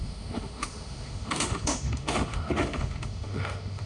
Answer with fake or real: fake